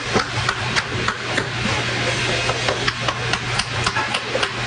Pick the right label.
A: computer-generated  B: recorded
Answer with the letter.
B